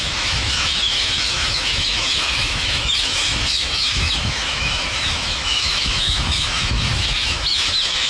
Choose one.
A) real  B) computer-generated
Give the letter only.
B